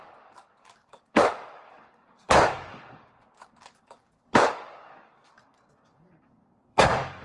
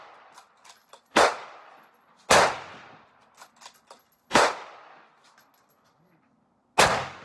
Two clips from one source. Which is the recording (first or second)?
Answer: second